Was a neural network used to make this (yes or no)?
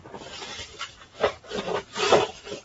no